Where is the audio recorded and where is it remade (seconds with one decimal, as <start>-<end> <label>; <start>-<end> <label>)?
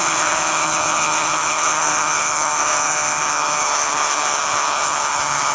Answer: 0.0-5.5 remade